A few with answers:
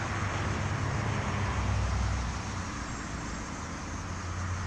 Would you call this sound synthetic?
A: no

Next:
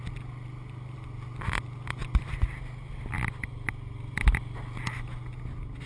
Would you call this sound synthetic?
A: no